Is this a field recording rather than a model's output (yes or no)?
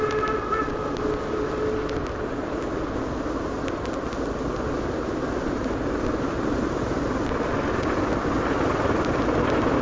yes